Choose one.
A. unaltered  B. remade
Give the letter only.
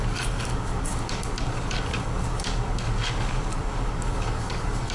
B